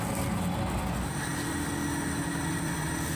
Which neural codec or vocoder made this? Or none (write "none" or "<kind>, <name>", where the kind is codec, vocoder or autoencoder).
vocoder, BigVGAN v2